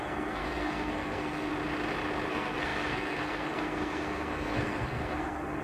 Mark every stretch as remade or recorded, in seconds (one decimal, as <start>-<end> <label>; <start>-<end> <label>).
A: 0.0-1.5 remade; 1.5-2.3 recorded; 2.3-5.6 remade